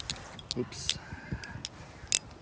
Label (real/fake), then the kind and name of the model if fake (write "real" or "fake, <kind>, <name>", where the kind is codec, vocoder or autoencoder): real